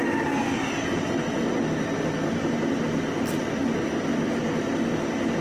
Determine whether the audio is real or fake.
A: real